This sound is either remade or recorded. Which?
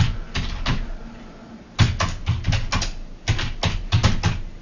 recorded